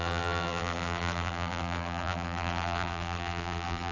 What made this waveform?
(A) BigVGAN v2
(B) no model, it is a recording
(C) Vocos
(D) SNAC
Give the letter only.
A